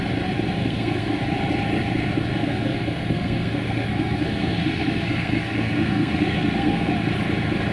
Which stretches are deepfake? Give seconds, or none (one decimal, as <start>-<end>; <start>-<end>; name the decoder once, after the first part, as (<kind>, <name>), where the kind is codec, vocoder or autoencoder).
0.6-1.2 (codec, SNAC); 2.3-6.9